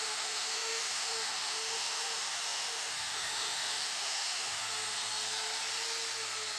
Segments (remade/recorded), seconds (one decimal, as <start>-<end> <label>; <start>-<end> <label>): 0.0-4.6 remade; 4.6-6.6 recorded